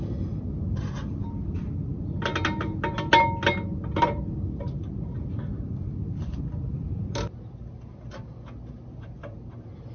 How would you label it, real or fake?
real